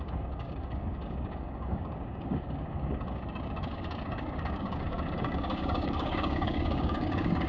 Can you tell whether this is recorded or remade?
remade